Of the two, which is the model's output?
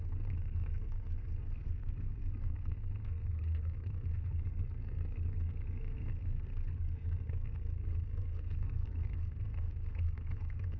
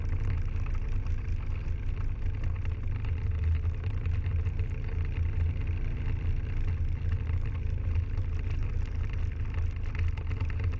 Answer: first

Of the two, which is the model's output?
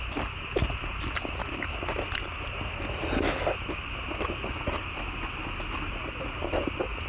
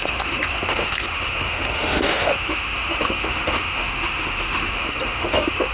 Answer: second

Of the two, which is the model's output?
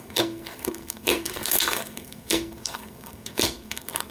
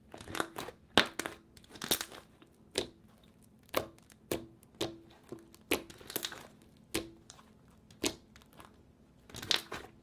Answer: first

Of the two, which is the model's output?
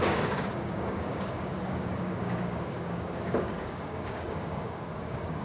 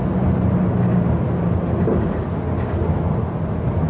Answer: first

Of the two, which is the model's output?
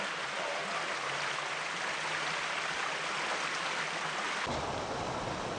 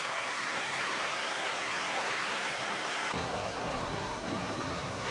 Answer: second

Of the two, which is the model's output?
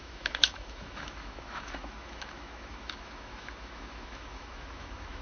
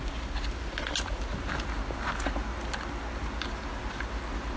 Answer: first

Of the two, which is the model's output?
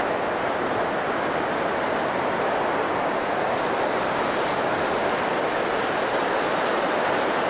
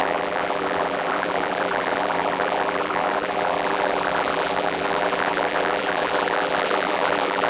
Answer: second